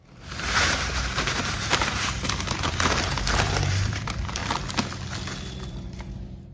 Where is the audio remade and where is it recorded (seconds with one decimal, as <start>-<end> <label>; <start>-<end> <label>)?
0.0-4.4 remade; 4.4-5.7 recorded; 5.7-6.5 remade